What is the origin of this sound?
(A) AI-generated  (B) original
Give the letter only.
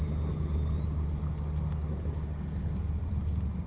B